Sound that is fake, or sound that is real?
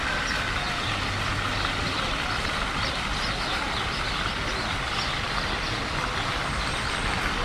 real